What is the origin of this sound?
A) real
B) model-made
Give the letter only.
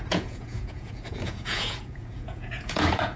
B